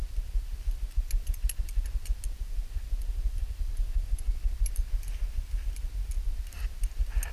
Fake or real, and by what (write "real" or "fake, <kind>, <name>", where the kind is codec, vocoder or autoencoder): real